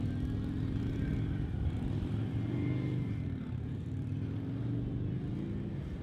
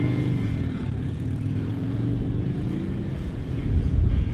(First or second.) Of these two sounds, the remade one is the second